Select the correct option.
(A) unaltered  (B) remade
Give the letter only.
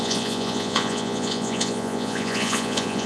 B